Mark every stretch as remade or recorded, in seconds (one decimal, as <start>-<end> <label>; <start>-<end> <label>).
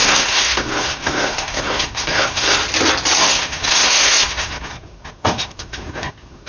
0.0-2.6 remade; 2.6-3.2 recorded; 3.2-6.5 remade